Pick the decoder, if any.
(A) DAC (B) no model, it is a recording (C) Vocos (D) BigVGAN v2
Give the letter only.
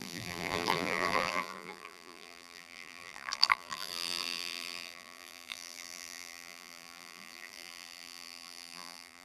D